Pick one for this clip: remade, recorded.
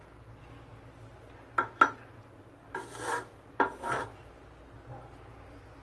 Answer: recorded